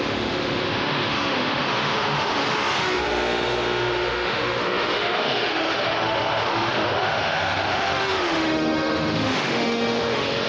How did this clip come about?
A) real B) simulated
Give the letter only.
B